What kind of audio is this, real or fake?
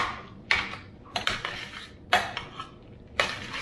real